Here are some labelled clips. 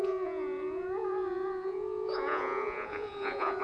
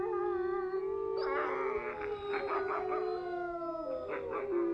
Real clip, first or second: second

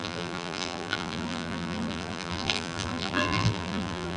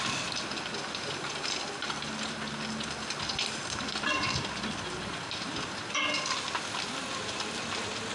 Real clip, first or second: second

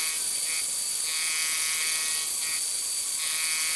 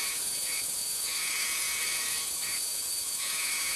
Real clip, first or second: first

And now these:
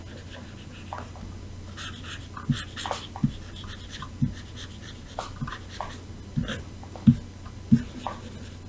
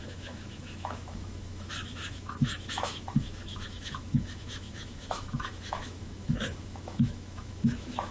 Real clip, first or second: first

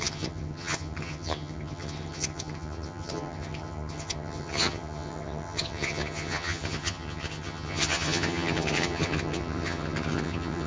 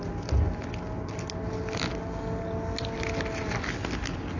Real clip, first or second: second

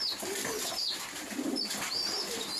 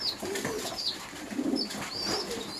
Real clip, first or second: first